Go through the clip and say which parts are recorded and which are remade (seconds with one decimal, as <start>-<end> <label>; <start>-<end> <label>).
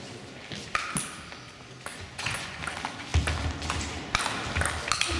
0.0-1.9 recorded; 1.9-2.6 remade; 2.6-5.2 recorded